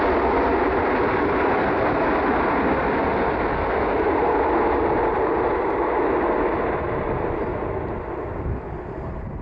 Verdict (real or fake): real